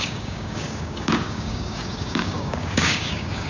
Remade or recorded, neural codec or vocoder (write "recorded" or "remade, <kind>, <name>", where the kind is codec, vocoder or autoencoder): remade, codec, DAC